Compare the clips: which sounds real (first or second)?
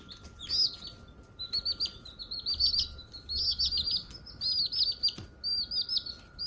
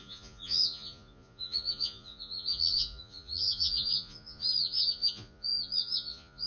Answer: first